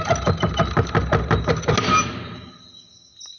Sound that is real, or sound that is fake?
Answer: real